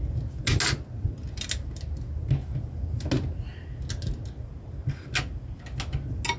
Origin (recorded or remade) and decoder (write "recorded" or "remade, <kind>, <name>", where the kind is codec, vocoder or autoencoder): recorded